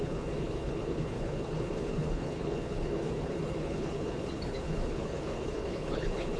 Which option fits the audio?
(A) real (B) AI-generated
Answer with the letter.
B